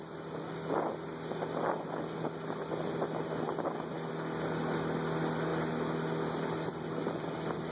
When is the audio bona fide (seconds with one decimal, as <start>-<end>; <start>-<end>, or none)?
0.0-7.7